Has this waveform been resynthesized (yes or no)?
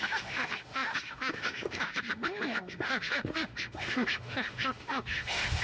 yes